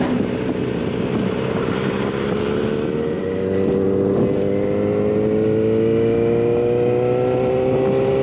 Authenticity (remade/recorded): recorded